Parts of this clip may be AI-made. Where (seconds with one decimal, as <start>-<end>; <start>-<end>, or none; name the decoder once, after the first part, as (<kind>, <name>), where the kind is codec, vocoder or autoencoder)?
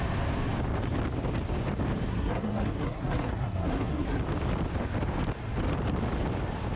2.1-4.2 (codec, SNAC)